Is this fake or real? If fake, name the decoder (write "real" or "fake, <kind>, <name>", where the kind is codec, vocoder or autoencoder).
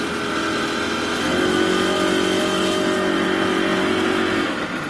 real